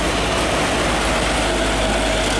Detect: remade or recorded recorded